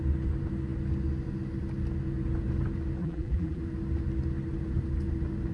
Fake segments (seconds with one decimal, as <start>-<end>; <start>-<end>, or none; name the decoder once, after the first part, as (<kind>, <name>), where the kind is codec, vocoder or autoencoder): 3.0-3.6 (vocoder, BigVGAN v2)